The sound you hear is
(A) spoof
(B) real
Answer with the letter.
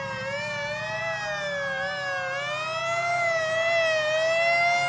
B